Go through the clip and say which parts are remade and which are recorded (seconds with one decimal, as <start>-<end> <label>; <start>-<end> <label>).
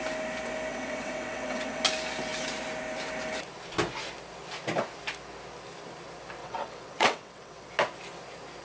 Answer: 0.0-0.7 recorded; 0.7-1.8 remade; 1.8-6.4 recorded; 6.4-7.7 remade; 7.7-8.6 recorded